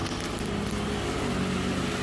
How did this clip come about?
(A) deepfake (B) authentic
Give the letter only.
B